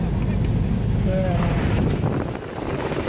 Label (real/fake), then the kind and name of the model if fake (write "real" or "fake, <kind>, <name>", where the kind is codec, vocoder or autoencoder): real